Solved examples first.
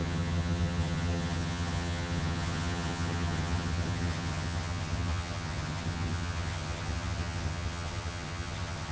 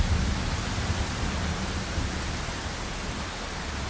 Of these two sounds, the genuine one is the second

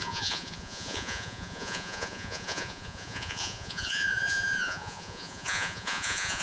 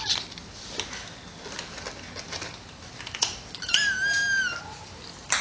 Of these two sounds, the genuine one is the second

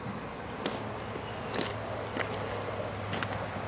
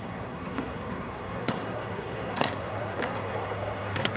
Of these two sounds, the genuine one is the first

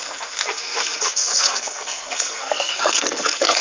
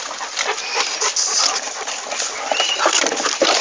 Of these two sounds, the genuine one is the second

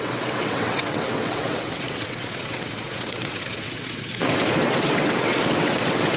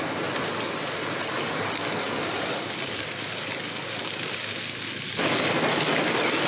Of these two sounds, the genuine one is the second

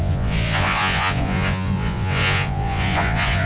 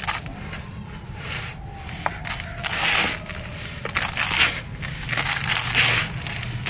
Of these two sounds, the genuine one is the second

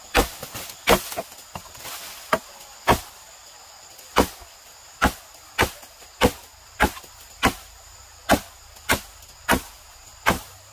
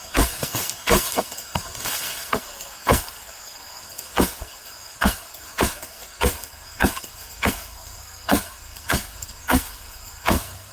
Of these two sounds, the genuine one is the first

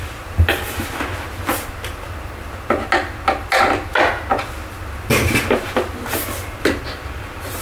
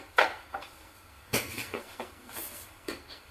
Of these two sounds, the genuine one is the first